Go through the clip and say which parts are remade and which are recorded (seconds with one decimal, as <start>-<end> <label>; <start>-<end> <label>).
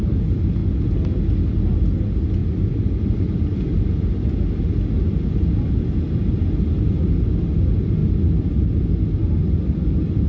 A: 0.0-2.4 recorded; 2.4-4.3 remade; 4.3-10.3 recorded